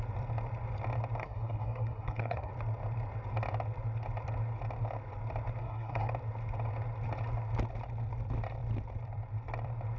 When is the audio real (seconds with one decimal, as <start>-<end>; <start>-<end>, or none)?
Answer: 0.0-1.2; 2.5-5.6; 6.1-10.0